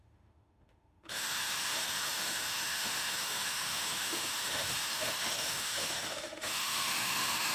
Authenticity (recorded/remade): remade